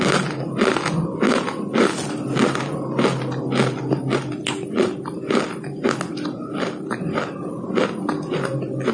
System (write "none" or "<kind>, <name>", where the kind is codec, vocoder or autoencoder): none